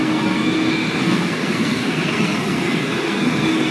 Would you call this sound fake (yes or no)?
yes